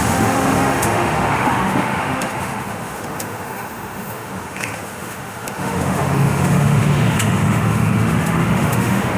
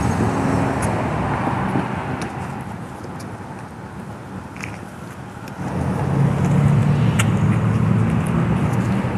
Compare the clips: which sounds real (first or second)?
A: second